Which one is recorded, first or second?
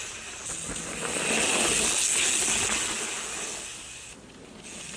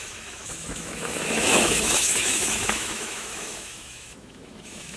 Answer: first